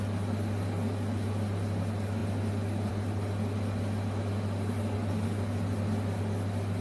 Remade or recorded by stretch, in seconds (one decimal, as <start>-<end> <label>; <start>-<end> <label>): 0.0-6.8 recorded